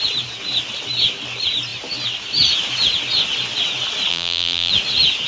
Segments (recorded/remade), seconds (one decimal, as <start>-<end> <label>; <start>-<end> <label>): 0.0-4.1 recorded; 4.1-4.7 remade; 4.7-5.3 recorded